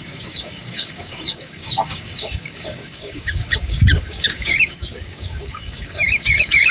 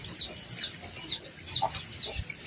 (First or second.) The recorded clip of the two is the second